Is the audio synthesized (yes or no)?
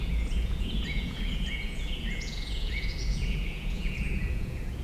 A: yes